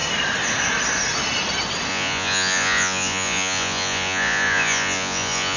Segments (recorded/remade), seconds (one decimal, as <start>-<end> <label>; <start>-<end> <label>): 0.0-1.9 recorded; 1.9-5.6 remade